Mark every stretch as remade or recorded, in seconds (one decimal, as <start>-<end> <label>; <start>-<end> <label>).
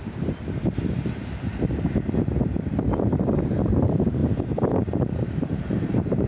0.0-4.2 remade; 4.2-5.4 recorded; 5.4-6.3 remade